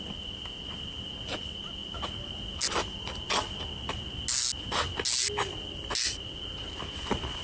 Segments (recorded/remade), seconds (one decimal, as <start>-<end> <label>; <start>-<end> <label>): 0.0-7.4 recorded